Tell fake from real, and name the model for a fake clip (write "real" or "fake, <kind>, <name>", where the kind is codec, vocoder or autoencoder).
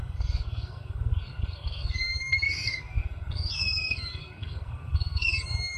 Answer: fake, codec, SNAC